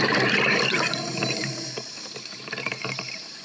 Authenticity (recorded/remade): remade